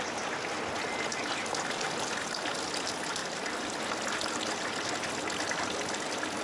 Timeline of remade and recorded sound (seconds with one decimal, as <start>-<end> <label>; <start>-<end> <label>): 0.0-6.4 recorded